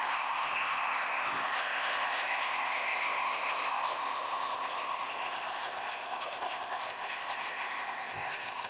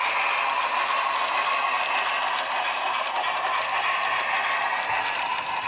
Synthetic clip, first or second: first